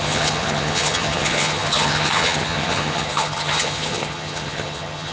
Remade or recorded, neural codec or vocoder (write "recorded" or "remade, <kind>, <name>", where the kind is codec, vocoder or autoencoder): remade, vocoder, HiFi-GAN